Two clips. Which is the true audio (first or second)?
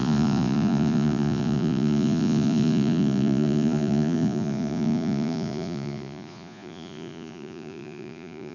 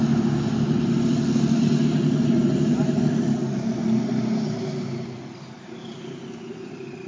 second